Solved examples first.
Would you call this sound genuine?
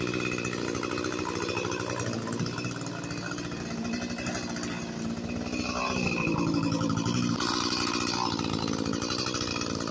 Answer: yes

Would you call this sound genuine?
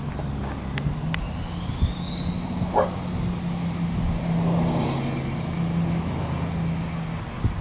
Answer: yes